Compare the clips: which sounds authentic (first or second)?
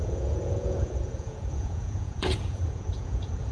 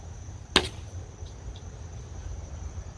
second